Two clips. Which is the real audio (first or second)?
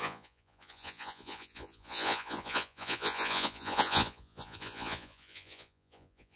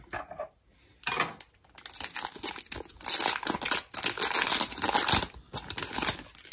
second